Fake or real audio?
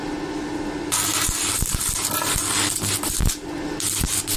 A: real